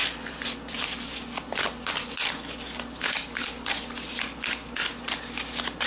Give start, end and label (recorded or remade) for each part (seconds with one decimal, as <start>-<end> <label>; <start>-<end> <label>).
0.0-3.5 remade; 3.5-5.9 recorded